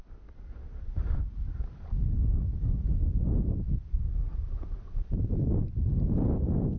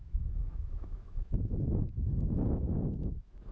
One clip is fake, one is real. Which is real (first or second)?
first